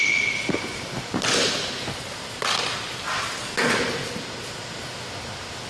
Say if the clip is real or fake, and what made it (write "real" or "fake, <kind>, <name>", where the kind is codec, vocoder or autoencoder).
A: real